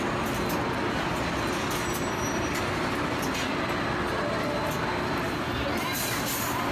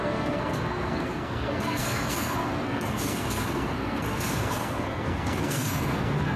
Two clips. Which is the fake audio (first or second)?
second